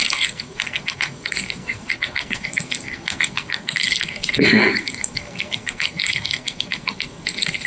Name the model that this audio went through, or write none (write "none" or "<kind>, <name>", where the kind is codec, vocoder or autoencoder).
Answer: codec, SNAC